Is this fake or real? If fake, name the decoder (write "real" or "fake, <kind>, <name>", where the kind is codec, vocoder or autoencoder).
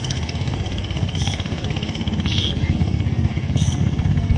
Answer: fake, codec, SNAC